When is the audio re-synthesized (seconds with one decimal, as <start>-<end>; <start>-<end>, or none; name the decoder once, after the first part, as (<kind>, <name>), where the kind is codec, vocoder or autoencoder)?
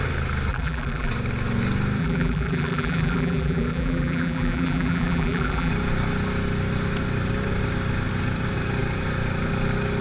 0.5-1.1 (vocoder, BigVGAN v2); 2.0-5.7